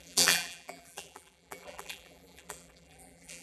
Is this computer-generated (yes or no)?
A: yes